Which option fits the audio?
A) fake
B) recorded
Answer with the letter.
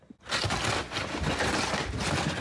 B